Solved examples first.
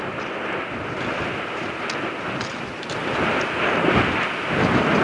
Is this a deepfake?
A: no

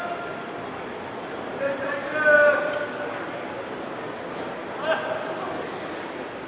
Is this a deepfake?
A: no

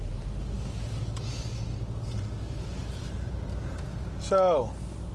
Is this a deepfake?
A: no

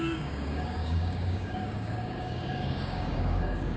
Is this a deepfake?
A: yes